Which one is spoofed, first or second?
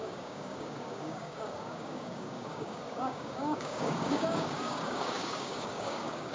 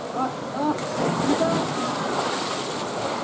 first